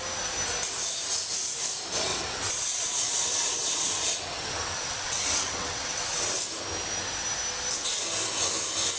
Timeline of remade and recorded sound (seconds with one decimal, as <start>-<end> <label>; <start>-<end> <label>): 0.0-2.1 recorded; 2.1-6.4 remade; 6.4-9.0 recorded